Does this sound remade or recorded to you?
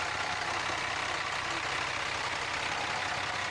recorded